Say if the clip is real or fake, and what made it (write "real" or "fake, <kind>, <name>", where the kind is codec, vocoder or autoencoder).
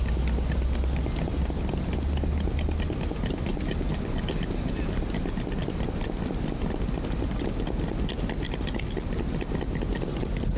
real